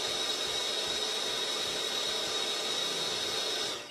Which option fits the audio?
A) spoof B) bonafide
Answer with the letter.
B